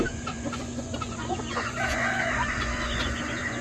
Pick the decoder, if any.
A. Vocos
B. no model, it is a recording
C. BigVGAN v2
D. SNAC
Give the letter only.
A